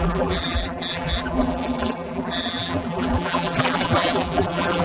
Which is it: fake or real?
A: fake